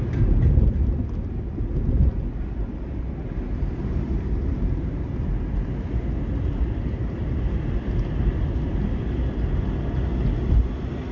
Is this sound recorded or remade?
recorded